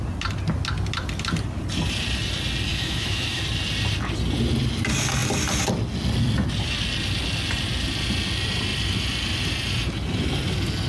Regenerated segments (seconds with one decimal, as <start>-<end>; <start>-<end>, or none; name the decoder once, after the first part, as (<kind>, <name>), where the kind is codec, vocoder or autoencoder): 2.7-3.4 (autoencoder, DAC-VAE)